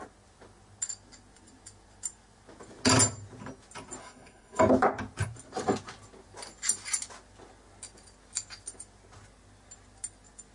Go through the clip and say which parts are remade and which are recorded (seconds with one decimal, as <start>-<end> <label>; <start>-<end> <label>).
0.0-4.0 recorded; 4.0-4.6 remade; 4.6-10.5 recorded